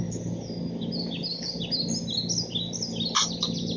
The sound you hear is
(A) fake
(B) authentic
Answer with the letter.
B